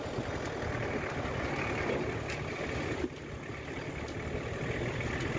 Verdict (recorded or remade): recorded